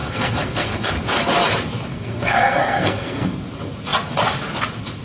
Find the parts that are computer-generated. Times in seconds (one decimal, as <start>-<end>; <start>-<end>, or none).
0.0-0.9; 1.9-3.3